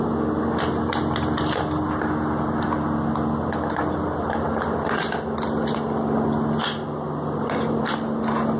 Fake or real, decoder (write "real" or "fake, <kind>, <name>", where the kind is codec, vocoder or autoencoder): real